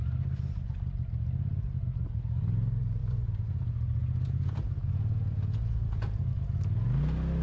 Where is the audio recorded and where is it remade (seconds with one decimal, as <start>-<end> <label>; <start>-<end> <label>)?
0.0-3.0 recorded; 3.0-6.3 remade; 6.3-7.4 recorded